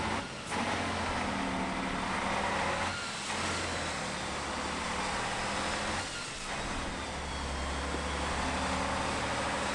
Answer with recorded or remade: recorded